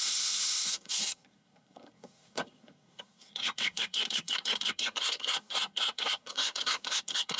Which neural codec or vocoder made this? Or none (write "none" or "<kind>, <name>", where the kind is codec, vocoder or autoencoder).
codec, SNAC